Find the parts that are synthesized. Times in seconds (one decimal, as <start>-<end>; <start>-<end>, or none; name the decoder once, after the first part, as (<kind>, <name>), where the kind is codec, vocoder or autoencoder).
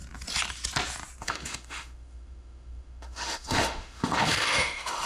1.2-5.1 (autoencoder, DAC-VAE)